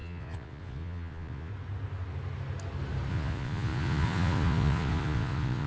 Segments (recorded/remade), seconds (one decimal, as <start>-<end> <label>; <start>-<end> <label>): 0.0-1.5 remade; 1.5-3.1 recorded; 3.1-5.7 remade